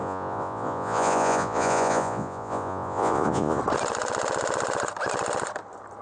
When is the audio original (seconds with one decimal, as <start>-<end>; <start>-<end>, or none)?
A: 3.6-6.0